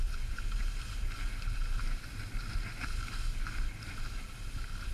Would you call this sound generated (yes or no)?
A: no